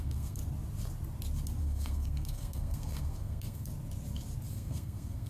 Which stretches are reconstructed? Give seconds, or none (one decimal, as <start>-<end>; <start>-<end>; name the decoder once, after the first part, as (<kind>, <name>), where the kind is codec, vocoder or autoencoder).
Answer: 0.0-0.4 (codec, SNAC); 1.6-3.7; 4.5-5.3